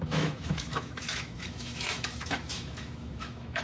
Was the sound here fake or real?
fake